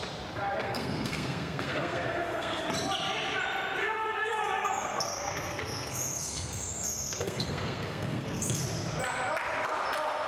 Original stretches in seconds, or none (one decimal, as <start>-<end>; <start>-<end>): 0.0-0.6; 2.6-3.8; 8.6-10.3